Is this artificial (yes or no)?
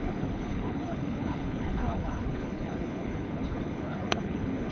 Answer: yes